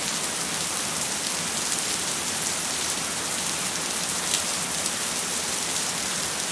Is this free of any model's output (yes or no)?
yes